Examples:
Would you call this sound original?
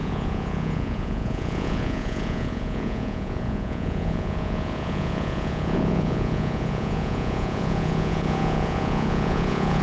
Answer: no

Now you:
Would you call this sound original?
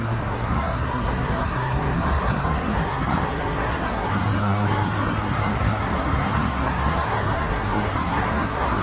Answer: no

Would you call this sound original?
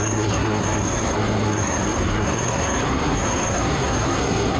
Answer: no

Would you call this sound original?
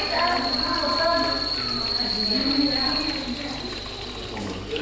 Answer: yes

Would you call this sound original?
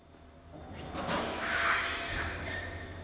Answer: yes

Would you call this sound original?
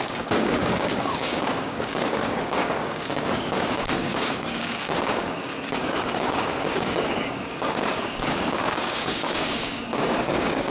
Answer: no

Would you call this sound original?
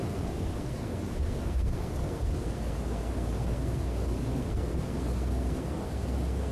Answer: no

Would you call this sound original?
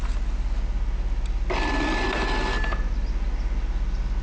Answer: yes